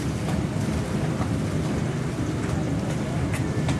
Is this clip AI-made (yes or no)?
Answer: no